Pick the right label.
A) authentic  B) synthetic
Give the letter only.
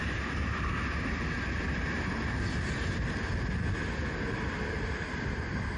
A